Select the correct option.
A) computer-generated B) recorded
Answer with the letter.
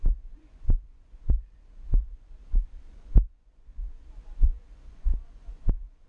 A